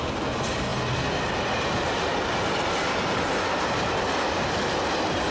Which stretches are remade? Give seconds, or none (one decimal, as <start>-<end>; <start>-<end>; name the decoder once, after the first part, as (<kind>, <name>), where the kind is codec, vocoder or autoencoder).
none